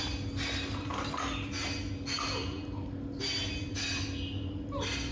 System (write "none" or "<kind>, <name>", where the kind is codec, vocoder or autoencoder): none